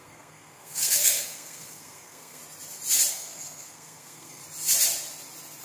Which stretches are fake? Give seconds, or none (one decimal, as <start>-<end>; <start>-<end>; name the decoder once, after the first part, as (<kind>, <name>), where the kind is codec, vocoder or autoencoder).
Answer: 0.0-2.4 (codec, SNAC); 3.1-4.4